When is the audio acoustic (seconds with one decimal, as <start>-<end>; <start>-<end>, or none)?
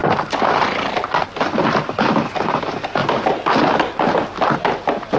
0.0-5.2